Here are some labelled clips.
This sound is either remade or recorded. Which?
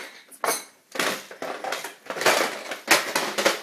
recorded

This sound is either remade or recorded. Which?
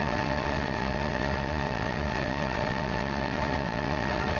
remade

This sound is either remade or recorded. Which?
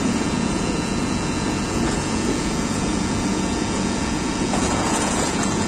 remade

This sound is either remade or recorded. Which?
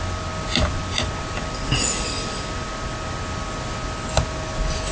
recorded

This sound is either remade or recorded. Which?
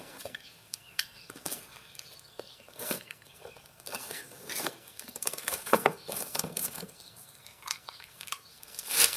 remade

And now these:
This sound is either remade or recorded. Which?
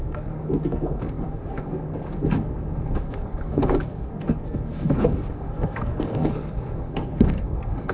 remade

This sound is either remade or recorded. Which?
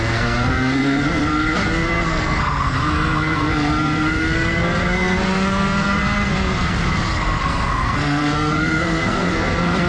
remade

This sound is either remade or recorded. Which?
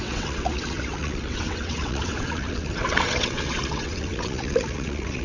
remade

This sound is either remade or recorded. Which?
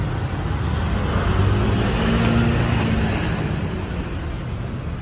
recorded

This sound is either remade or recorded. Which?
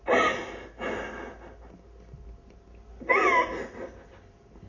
recorded